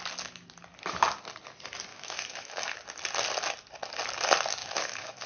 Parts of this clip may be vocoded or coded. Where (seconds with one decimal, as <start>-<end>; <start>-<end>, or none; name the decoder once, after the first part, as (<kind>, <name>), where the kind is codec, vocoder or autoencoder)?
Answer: 1.9-2.6 (autoencoder, DAC-VAE); 4.6-5.3